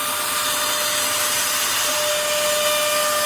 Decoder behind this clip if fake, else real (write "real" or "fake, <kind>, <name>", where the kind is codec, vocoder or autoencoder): real